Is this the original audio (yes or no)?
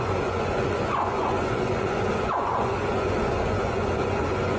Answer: no